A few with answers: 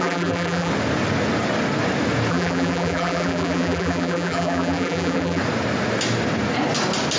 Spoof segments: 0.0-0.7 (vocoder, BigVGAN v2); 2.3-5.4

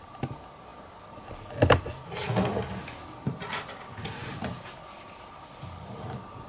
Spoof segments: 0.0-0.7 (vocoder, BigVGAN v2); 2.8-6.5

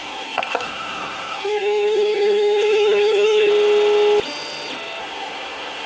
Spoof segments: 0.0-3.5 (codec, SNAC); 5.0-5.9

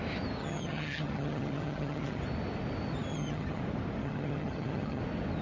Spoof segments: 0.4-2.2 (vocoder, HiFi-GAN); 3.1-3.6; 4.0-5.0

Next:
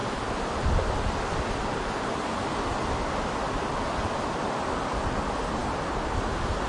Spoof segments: none

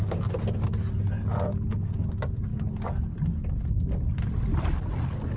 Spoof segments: none